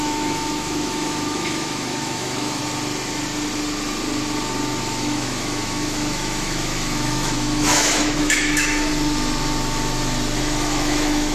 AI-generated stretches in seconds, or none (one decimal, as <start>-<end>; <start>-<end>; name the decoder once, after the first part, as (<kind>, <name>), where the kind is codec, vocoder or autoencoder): 0.0-2.6 (autoencoder, DAC-VAE); 4.8-8.9; 10.4-11.3